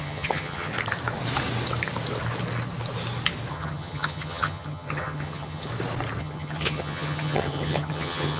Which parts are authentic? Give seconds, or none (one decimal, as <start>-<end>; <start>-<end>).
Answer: 0.7-3.5; 5.7-6.2